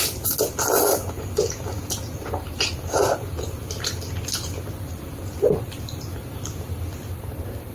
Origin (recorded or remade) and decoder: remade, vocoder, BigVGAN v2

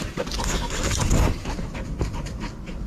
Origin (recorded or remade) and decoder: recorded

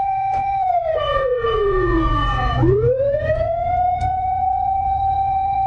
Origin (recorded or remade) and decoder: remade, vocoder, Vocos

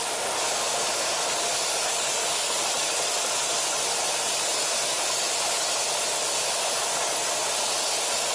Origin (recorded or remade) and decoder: recorded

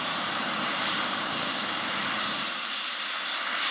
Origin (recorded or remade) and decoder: remade, vocoder, BigVGAN v2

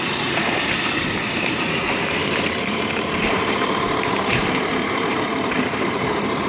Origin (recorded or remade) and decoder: remade, vocoder, BigVGAN v2